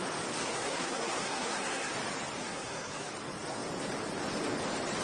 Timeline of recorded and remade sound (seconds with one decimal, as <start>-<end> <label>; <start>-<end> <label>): 0.0-0.4 recorded; 0.4-1.9 remade; 1.9-2.4 recorded; 2.4-3.1 remade; 3.1-5.0 recorded